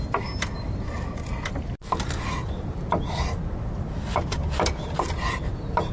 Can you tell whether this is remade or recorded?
recorded